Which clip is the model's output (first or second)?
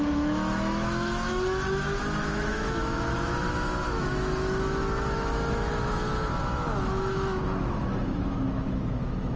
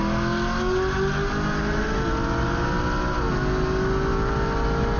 first